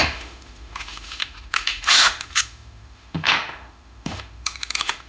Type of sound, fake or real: fake